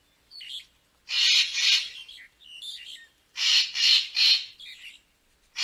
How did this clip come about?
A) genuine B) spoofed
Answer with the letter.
A